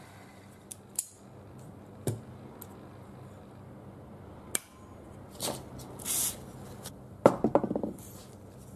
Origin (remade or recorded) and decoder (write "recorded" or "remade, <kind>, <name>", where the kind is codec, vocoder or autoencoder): recorded